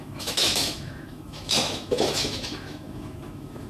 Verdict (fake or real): fake